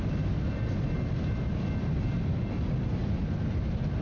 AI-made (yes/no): no